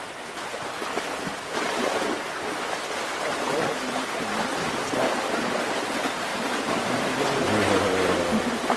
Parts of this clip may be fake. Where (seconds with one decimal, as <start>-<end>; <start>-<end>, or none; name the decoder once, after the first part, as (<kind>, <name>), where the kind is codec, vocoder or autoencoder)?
none